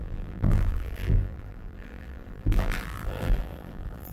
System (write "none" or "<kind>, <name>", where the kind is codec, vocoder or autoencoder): vocoder, BigVGAN v2